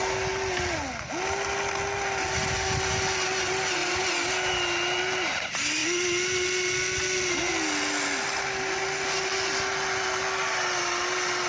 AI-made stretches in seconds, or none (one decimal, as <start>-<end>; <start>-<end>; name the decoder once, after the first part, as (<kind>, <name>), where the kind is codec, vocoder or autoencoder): none